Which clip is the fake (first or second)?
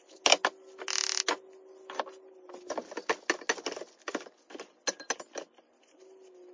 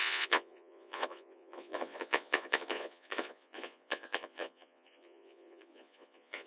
second